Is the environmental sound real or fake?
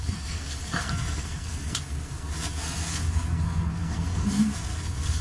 fake